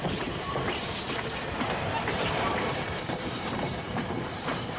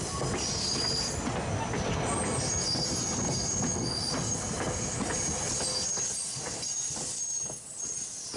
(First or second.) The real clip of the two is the second